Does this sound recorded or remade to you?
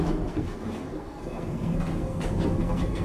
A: remade